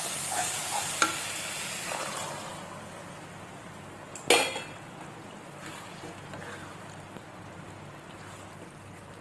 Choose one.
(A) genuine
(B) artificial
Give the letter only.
A